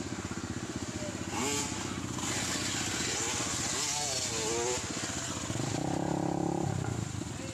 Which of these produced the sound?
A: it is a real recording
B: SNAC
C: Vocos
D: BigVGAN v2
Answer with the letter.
A